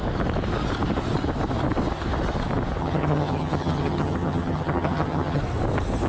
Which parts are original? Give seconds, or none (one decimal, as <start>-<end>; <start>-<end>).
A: 0.0-2.8; 5.4-6.1